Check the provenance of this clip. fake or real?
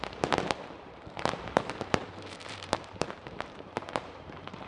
fake